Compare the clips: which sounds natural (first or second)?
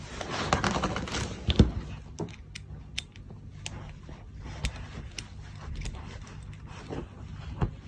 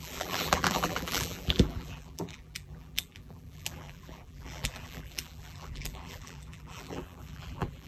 first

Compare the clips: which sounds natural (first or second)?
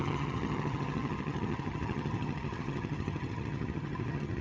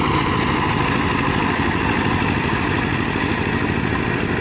second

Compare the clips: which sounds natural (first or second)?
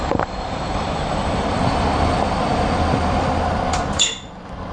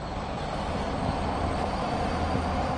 second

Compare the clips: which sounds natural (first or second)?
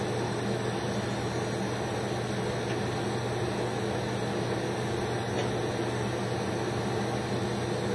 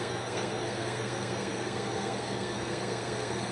first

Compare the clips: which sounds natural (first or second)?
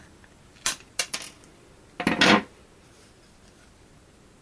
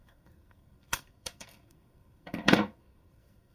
first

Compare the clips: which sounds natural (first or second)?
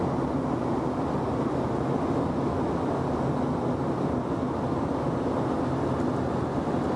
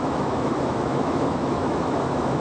first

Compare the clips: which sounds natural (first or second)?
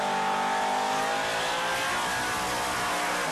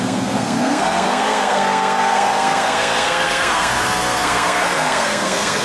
first